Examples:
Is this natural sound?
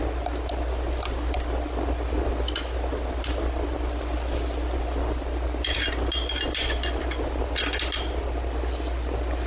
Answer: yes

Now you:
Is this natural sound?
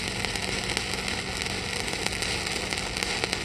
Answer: yes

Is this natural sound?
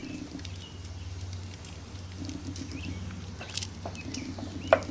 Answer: yes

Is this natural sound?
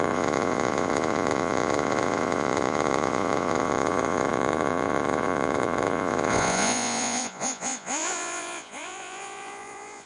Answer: no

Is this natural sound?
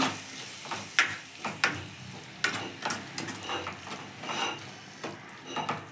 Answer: yes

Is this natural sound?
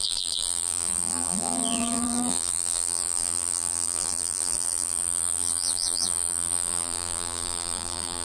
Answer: no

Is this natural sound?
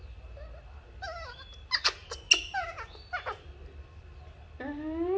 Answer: yes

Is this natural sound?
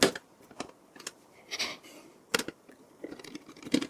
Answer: yes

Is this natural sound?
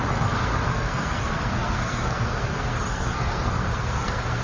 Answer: no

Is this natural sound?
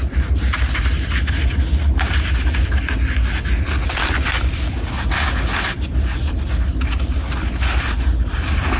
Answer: yes